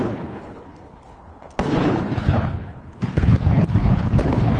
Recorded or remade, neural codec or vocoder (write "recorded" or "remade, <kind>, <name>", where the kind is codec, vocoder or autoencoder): remade, codec, HILCodec